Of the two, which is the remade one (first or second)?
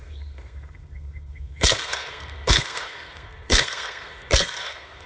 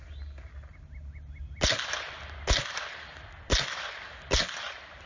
first